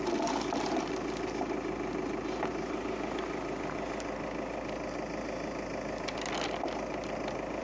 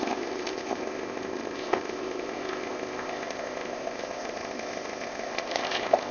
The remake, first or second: second